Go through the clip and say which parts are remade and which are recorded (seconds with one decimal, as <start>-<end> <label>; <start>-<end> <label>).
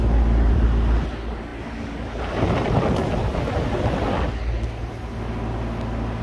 0.0-6.2 recorded